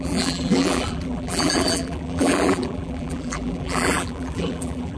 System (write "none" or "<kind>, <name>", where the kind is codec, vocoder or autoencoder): vocoder, BigVGAN v2